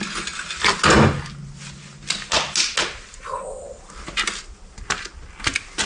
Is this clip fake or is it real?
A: real